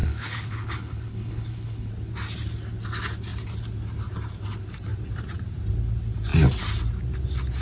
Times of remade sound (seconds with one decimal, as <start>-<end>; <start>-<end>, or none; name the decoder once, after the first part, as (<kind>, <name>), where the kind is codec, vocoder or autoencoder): 0.0-1.9 (codec, HILCodec)